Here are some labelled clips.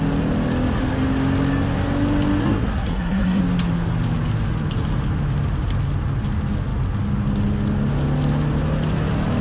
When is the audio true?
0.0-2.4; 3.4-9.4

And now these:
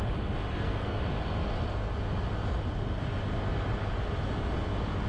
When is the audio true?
0.0-0.5; 1.0-5.1